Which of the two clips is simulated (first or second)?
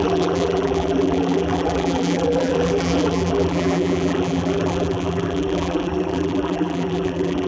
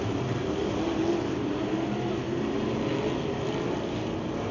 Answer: first